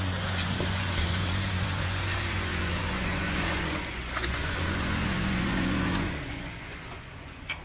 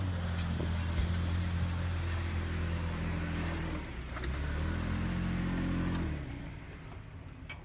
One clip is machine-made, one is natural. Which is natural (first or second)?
second